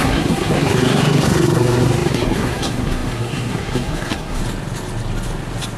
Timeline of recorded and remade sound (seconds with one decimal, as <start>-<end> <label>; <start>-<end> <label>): 0.0-4.4 remade; 4.4-5.8 recorded